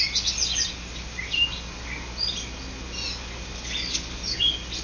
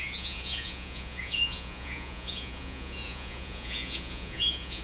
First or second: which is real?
first